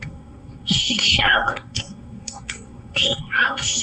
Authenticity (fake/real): fake